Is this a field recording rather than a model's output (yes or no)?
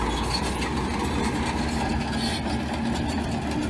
yes